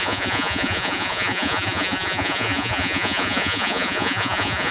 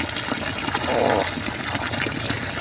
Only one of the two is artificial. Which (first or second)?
first